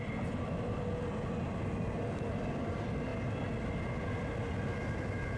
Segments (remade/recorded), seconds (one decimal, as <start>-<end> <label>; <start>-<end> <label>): 0.0-5.4 recorded

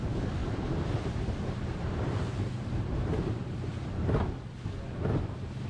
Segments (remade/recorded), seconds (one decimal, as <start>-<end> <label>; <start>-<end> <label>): 0.0-0.4 recorded; 0.4-3.8 remade; 3.8-5.7 recorded

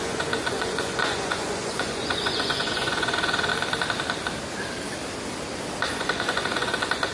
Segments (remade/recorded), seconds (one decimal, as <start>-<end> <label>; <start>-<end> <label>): 0.0-3.5 remade; 3.5-5.9 recorded; 5.9-7.1 remade

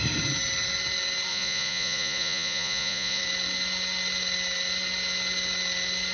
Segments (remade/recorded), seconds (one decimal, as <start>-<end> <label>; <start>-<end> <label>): 0.0-1.3 recorded; 1.3-3.2 remade; 3.2-6.1 recorded

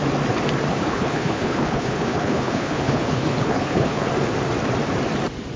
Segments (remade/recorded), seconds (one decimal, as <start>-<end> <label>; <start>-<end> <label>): 0.0-0.7 recorded; 0.7-4.1 remade; 4.1-5.6 recorded

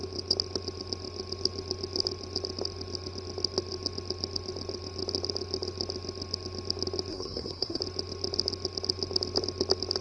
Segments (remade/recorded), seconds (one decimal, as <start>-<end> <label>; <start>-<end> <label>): 0.0-7.1 recorded; 7.1-7.8 remade; 7.8-10.0 recorded